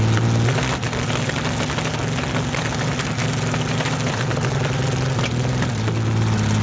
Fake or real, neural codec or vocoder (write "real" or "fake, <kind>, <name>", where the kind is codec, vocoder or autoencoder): real